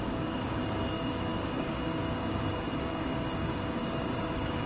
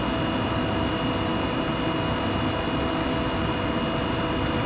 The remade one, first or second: first